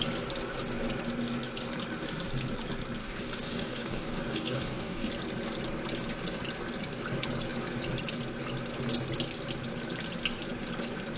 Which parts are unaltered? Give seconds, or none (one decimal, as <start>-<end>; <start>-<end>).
0.0-3.0; 5.1-11.2